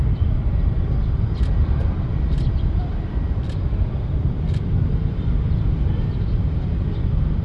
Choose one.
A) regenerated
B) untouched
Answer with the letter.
A